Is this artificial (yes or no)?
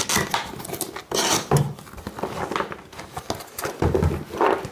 no